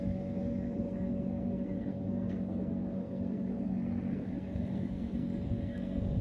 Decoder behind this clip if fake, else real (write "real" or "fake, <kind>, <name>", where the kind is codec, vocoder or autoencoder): fake, codec, SNAC